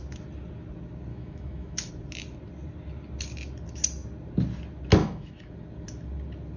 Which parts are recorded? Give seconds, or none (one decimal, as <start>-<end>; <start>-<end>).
0.0-1.1; 1.9-5.0; 5.5-6.6